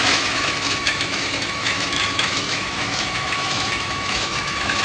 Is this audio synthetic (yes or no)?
yes